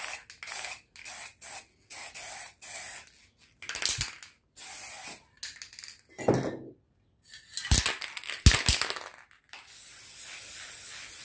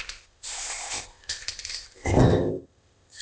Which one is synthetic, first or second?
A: second